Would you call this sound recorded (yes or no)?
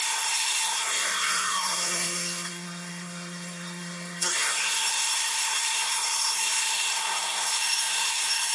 no